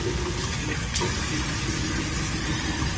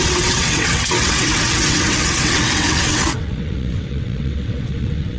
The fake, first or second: second